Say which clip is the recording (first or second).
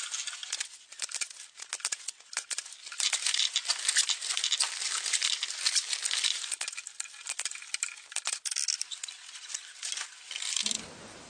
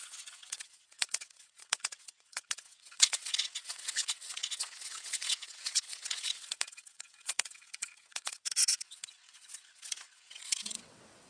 first